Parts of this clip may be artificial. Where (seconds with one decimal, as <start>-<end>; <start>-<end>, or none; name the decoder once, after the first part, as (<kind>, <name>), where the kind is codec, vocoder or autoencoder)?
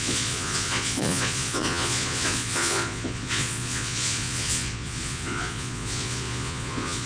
0.0-7.1 (vocoder, Vocos)